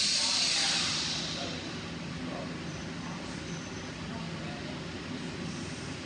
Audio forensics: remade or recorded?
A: recorded